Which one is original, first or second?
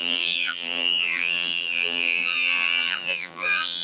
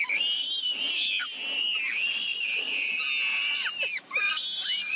second